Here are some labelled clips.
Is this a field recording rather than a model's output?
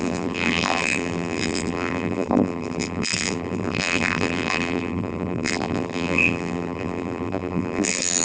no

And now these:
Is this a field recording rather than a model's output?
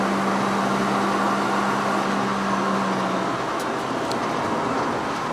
yes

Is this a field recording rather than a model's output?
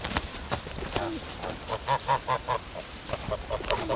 no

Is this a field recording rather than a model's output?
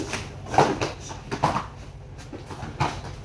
yes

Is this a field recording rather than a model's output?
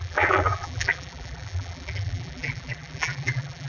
no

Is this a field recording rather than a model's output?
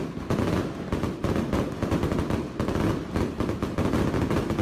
yes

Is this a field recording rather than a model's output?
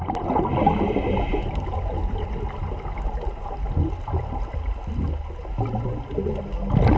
yes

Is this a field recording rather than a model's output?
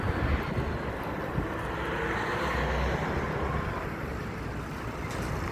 yes